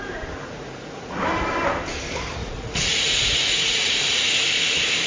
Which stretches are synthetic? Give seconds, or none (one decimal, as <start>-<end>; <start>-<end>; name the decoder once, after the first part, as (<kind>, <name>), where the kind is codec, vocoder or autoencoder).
0.4-1.1 (vocoder, Vocos); 2.4-4.3